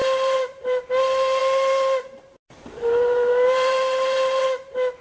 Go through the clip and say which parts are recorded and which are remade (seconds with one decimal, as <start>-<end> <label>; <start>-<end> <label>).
0.0-0.9 remade; 0.9-1.4 recorded; 1.4-4.4 remade; 4.4-5.0 recorded